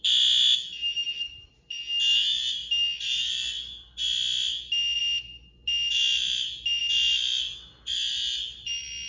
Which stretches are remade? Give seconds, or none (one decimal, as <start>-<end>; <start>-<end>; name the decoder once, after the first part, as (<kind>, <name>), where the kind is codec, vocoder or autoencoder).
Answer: none

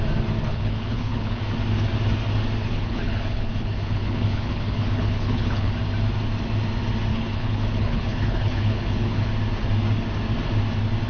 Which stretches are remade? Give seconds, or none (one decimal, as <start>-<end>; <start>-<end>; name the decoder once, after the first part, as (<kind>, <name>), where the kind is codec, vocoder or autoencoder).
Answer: 0.5-1.4 (codec, HILCodec); 2.6-5.7; 7.1-9.3